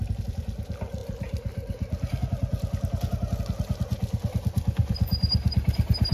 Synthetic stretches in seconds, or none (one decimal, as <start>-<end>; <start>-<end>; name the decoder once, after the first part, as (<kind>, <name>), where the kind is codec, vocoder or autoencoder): 4.8-6.1 (vocoder, BigVGAN v2)